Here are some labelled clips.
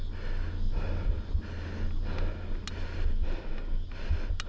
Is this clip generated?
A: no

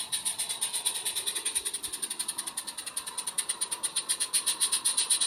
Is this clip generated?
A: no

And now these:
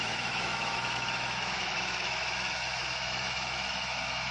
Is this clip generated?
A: yes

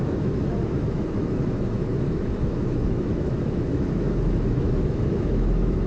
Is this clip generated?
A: yes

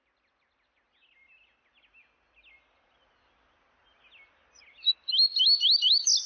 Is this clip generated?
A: no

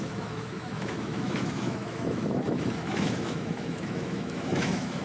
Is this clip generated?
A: yes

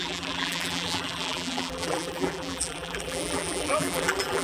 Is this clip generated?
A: yes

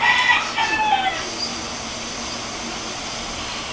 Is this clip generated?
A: no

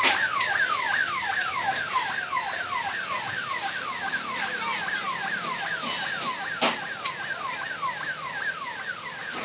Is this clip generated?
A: no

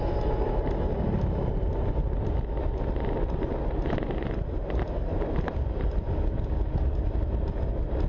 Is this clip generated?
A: no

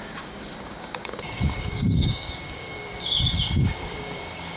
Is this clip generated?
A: yes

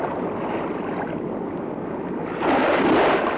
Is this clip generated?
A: no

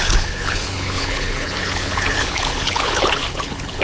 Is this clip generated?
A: yes